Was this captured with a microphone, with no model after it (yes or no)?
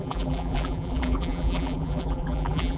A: no